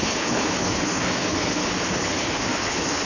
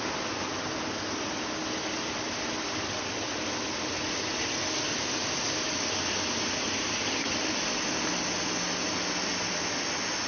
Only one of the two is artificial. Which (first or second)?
first